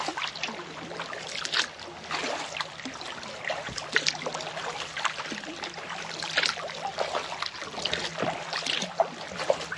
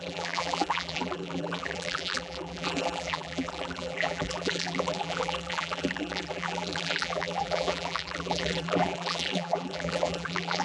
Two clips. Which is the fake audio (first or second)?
second